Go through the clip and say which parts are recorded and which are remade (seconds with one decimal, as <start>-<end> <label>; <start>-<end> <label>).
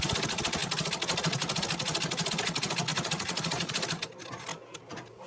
0.0-2.9 recorded; 2.9-3.7 remade; 3.7-5.3 recorded